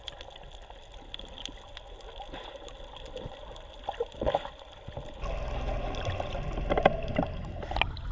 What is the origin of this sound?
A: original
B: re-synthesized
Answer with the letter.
A